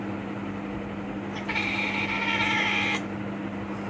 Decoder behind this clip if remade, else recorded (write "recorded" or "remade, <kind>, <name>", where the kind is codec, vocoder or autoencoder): recorded